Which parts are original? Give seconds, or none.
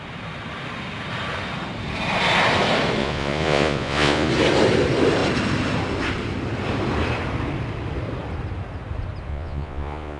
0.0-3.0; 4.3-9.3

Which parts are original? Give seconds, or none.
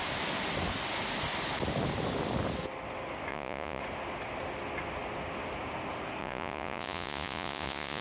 0.0-3.3; 3.8-6.2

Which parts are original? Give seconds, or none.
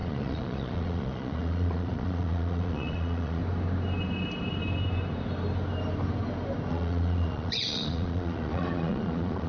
3.4-6.7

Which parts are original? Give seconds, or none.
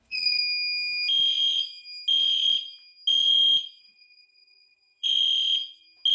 0.4-3.8; 5.2-6.1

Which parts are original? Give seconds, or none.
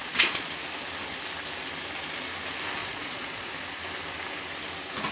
0.5-2.8; 3.5-5.1